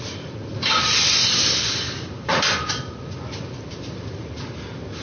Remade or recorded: remade